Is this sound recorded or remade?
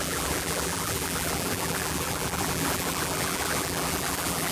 remade